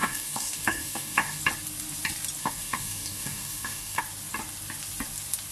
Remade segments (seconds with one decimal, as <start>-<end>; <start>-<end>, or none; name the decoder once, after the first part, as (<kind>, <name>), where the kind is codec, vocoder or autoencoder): 0.0-1.4 (codec, DAC); 2.4-4.0